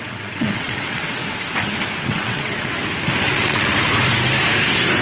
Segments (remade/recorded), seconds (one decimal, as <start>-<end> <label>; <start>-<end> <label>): 0.0-1.2 remade; 1.2-2.0 recorded; 2.0-2.7 remade; 2.7-3.3 recorded; 3.3-3.7 remade; 3.7-5.0 recorded